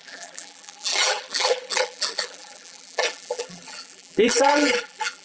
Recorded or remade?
remade